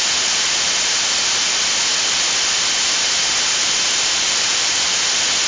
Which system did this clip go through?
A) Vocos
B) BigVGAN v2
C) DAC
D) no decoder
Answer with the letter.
D